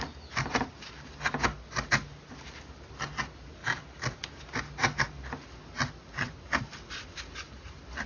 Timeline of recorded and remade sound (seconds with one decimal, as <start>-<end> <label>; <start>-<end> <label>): 0.0-8.1 recorded